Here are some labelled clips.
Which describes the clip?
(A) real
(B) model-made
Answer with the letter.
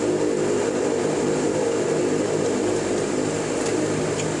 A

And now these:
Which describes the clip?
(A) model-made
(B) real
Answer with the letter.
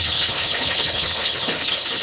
A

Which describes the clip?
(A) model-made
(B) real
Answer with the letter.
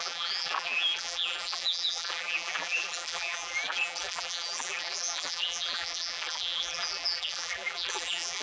A